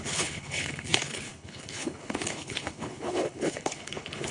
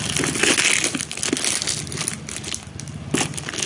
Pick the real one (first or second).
second